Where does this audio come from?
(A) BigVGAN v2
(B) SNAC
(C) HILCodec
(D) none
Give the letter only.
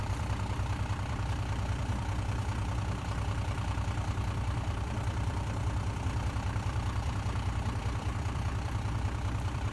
A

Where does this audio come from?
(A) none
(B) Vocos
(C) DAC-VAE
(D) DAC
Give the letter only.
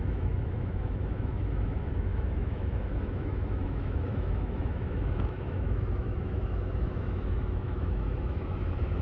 C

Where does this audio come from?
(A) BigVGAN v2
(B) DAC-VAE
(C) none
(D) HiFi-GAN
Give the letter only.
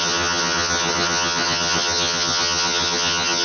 D